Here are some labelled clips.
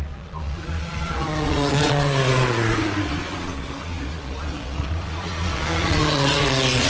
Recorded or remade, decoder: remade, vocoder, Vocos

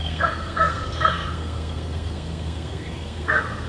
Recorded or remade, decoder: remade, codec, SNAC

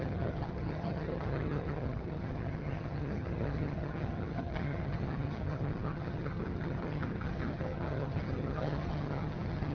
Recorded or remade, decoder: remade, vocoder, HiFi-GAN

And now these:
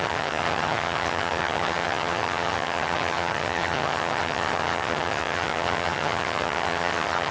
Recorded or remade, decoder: remade, vocoder, HiFi-GAN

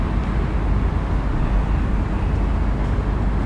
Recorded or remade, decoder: recorded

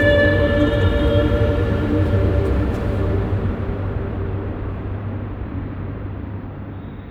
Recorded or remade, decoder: remade, vocoder, BigVGAN v2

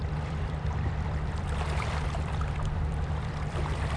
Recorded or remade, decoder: remade, vocoder, BigVGAN v2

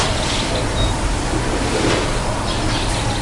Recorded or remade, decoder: recorded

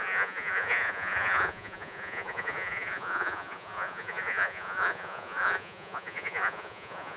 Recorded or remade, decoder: remade, vocoder, Vocos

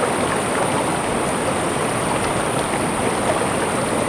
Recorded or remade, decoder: recorded